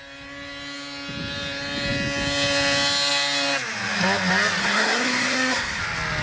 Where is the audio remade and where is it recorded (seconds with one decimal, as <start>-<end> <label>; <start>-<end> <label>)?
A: 0.0-4.6 recorded; 4.6-5.8 remade; 5.8-6.2 recorded